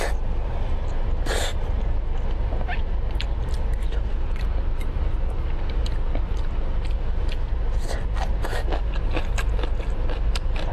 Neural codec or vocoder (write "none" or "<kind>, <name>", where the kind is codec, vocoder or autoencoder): none